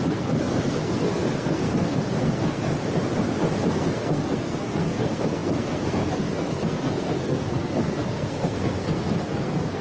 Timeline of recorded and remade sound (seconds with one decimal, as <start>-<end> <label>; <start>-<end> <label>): 0.0-2.7 remade; 2.7-3.7 recorded; 3.7-9.8 remade